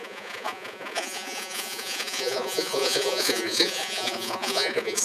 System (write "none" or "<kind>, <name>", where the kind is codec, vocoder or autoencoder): vocoder, Vocos